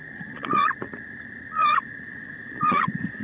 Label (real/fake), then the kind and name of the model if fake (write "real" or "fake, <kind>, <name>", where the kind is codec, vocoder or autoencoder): fake, vocoder, Vocos